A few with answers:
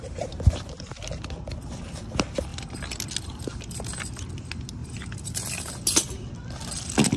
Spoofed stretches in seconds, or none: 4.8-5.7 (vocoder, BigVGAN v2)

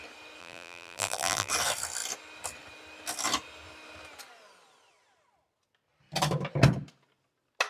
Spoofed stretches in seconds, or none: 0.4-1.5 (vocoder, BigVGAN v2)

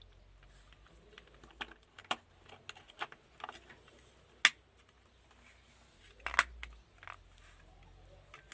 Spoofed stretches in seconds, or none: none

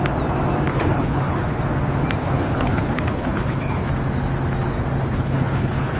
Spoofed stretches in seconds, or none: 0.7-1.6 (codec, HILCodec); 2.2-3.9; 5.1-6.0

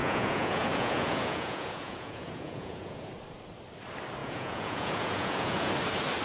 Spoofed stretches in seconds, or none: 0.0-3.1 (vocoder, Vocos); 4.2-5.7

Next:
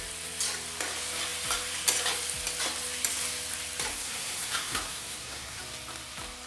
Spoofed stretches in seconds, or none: 3.9-5.6 (codec, SNAC)

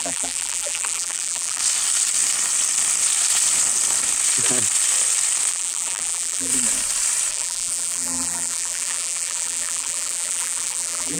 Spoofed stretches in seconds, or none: 0.0-1.6 (vocoder, BigVGAN v2); 5.5-6.5; 7.3-11.2

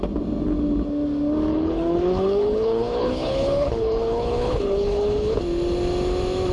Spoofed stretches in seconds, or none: 1.5-5.4 (codec, HILCodec)